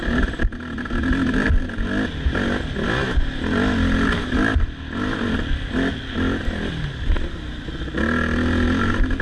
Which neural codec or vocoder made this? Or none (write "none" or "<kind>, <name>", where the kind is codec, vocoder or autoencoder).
none